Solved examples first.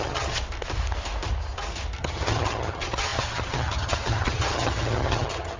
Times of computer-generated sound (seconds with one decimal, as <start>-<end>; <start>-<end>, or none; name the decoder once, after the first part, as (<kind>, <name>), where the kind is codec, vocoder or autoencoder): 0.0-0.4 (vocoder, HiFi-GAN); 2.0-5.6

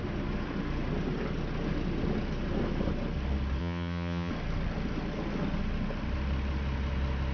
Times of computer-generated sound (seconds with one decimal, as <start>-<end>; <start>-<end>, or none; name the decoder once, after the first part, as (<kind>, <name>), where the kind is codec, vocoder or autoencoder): 3.6-4.3 (vocoder, HiFi-GAN)

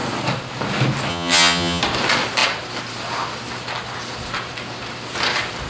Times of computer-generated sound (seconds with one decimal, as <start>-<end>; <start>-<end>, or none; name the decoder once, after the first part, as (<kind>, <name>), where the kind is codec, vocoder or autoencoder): 1.1-1.8 (vocoder, HiFi-GAN)

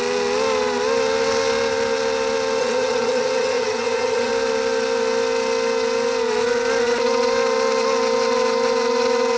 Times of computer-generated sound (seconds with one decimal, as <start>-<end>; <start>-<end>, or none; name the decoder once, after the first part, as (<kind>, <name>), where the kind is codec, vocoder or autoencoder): 2.6-4.3 (vocoder, HiFi-GAN)